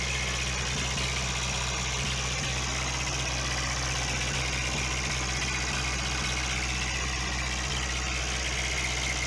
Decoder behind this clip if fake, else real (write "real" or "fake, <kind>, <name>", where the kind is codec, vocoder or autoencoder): real